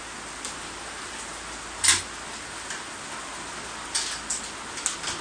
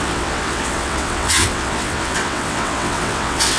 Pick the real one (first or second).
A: first